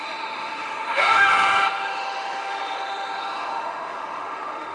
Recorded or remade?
remade